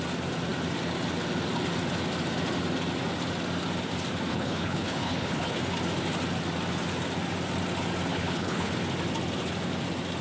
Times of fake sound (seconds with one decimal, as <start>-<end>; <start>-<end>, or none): 4.3-5.6; 8.1-8.7